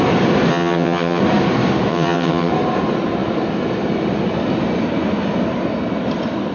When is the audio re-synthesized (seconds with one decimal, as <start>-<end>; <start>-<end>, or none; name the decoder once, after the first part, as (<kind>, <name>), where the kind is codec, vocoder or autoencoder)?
0.5-1.2 (vocoder, HiFi-GAN); 1.9-2.5